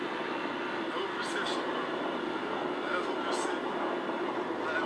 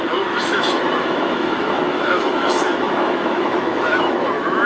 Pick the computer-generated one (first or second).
second